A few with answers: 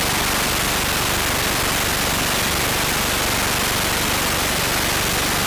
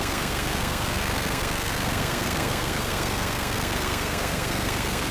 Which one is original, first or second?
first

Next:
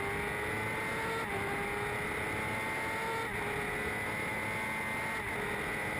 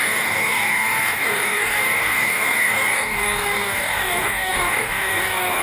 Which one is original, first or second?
first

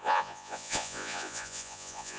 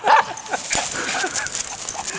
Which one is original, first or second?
second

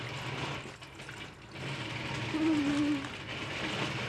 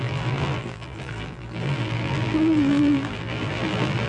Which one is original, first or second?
first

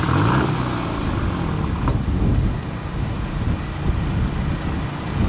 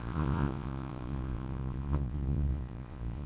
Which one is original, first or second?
first